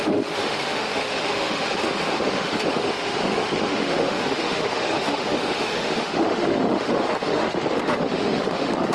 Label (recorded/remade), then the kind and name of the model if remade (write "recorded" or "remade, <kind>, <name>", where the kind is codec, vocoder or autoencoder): remade, autoencoder, DAC-VAE